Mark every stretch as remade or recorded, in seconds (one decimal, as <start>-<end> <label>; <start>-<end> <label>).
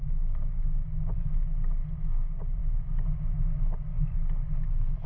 0.0-5.1 recorded